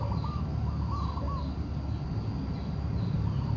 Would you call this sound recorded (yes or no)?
yes